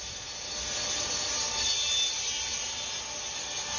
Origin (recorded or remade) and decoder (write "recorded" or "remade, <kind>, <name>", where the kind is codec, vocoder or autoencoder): recorded